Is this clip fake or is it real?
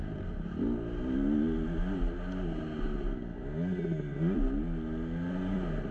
real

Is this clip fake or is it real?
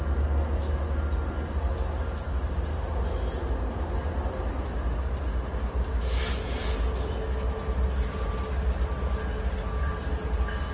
real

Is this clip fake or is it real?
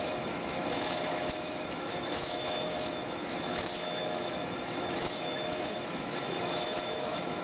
fake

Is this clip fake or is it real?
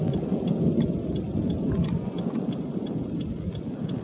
real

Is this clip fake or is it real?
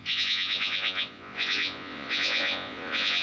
fake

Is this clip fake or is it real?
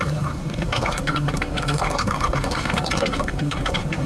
fake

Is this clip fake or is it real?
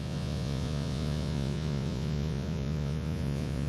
fake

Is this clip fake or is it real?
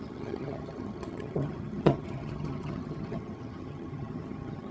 fake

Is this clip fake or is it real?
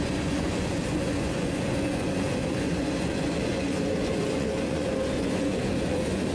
fake